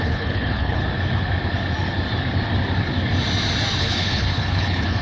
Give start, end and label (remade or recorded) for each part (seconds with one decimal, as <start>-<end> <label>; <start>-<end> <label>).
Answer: 0.0-0.8 remade; 0.8-3.8 recorded; 3.8-5.0 remade